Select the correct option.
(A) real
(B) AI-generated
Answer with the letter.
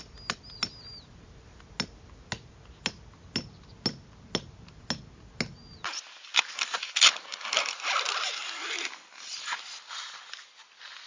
A